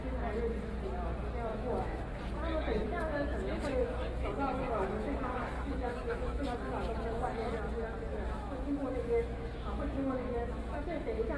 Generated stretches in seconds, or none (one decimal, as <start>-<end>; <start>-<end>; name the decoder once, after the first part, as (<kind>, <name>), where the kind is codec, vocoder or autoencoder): 1.5-2.2 (autoencoder, DAC-VAE); 2.8-6.4; 8.1-11.4